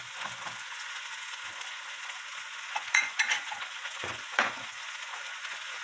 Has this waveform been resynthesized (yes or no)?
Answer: yes